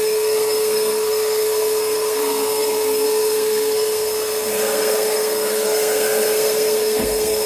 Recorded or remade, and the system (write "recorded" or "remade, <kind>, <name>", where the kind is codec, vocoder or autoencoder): remade, codec, SNAC